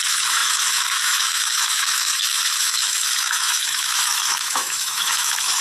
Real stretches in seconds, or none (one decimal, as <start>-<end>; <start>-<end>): none